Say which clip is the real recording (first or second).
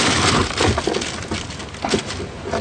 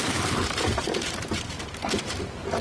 first